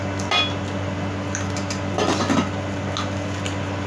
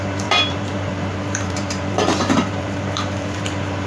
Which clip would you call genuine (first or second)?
first